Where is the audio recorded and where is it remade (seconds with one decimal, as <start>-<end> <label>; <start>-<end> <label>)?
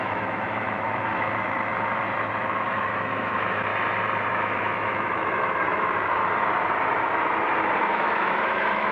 0.0-1.7 remade; 1.7-2.4 recorded; 2.4-3.7 remade; 3.7-4.3 recorded; 4.3-6.2 remade; 6.2-7.8 recorded; 7.8-8.9 remade